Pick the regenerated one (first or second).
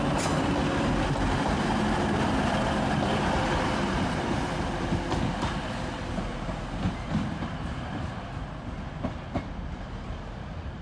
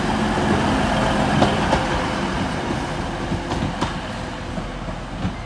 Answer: first